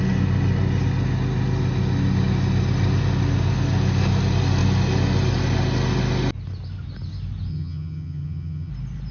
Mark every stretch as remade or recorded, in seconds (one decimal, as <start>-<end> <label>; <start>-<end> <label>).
0.0-7.5 recorded; 7.5-8.7 remade; 8.7-9.1 recorded